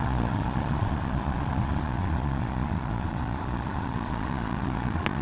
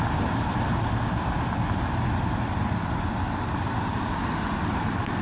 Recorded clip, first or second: second